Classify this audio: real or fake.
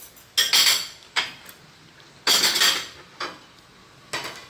real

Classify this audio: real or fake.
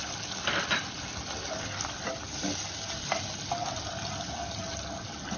real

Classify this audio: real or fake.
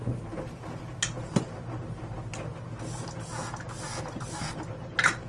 real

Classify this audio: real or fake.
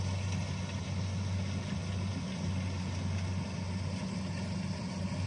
real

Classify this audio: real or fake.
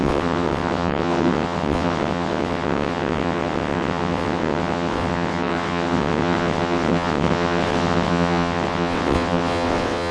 fake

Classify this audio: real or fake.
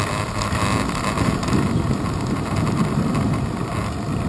real